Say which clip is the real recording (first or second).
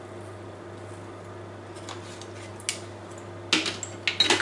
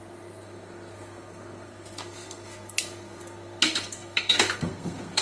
first